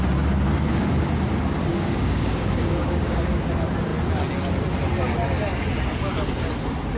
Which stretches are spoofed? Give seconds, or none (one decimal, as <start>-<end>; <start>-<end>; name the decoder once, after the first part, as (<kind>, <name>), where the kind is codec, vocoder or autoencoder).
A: 1.7-3.4 (codec, DAC)